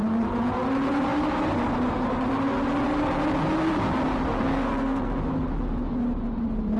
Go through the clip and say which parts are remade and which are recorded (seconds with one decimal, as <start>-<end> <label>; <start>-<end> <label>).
0.0-4.3 recorded; 4.3-5.2 remade; 5.2-6.8 recorded